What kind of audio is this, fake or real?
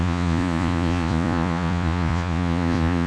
fake